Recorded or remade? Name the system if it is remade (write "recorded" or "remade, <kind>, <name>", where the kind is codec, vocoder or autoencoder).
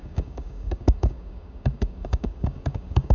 remade, codec, DAC